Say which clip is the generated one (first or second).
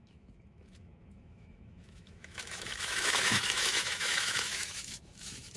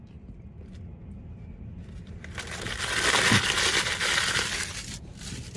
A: first